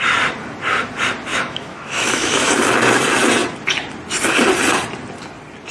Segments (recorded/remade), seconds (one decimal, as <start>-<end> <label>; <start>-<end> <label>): 0.0-1.3 recorded; 1.3-2.5 remade; 2.5-5.7 recorded